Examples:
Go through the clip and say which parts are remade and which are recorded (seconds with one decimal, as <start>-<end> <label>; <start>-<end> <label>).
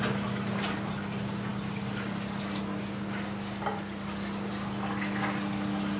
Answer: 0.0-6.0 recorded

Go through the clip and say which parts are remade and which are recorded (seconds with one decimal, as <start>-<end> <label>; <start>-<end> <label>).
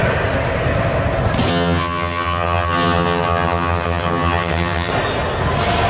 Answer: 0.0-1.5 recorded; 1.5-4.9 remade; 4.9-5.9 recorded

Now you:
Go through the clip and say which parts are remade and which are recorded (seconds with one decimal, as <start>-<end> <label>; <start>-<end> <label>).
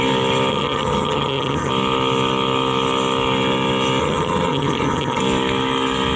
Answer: 0.0-0.5 recorded; 0.5-1.7 remade; 1.7-4.0 recorded; 4.0-5.2 remade; 5.2-6.2 recorded